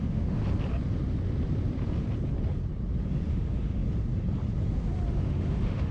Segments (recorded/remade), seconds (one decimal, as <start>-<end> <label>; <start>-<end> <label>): 0.0-0.4 remade; 0.4-3.3 recorded; 3.3-3.8 remade; 3.8-5.1 recorded; 5.1-5.9 remade